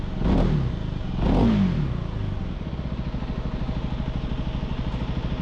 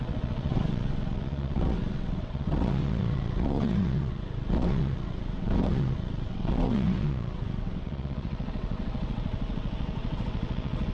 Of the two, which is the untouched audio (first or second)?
first